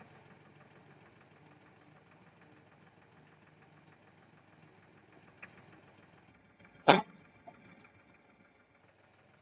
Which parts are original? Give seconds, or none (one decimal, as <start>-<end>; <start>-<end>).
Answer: 0.0-6.3; 8.8-9.4